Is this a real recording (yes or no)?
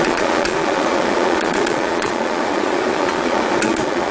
no